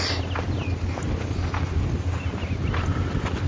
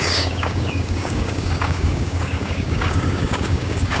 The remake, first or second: second